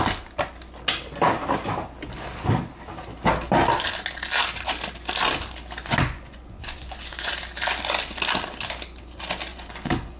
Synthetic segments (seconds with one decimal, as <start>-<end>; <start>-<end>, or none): 5.8-7.3; 9.5-10.2